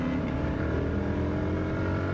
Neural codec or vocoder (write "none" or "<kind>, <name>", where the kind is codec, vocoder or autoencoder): none